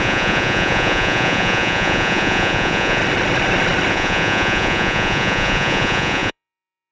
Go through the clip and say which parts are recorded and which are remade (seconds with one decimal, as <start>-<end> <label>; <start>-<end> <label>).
0.0-3.0 remade; 3.0-3.9 recorded; 3.9-6.9 remade